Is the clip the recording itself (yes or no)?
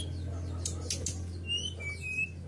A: yes